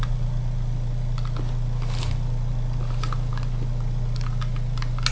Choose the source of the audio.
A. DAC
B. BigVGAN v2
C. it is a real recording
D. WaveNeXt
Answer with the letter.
C